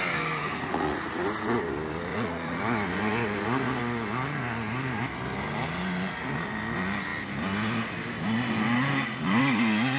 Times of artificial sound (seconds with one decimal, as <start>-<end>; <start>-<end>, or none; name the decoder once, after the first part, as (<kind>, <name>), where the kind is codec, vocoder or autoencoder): 0.4-1.1 (vocoder, Vocos); 2.1-2.6